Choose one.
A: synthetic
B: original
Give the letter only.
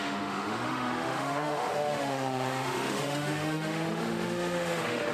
A